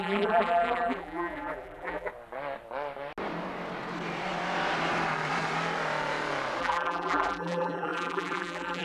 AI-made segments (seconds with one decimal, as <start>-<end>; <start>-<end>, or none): 0.0-2.1; 6.6-8.8